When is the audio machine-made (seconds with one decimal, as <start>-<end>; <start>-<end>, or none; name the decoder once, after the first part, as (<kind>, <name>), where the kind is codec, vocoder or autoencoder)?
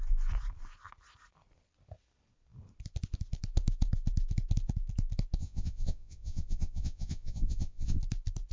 5.4-8.0 (vocoder, Vocos)